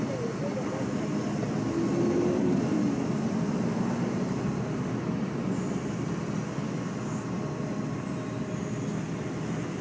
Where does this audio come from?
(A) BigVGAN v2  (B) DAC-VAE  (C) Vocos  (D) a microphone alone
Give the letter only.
D